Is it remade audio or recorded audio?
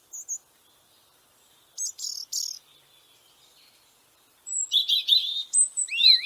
recorded